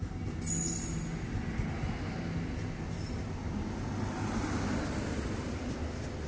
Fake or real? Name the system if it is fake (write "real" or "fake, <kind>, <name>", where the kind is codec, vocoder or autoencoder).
real